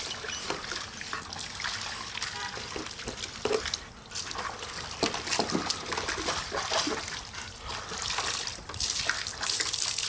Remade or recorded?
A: recorded